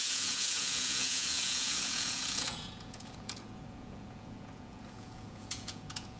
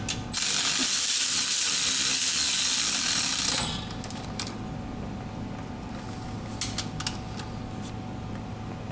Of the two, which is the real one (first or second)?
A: second